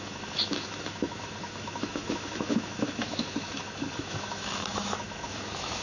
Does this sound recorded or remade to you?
remade